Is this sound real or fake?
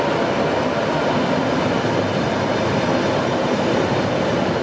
real